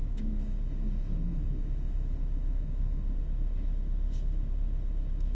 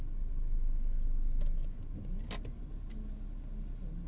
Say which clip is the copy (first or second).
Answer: first